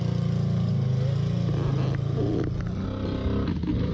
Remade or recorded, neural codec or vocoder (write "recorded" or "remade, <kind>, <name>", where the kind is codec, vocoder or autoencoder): recorded